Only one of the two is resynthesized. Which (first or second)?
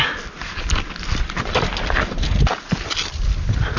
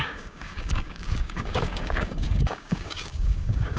second